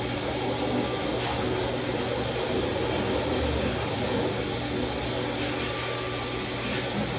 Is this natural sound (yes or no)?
yes